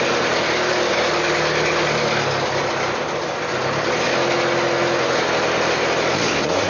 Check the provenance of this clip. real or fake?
real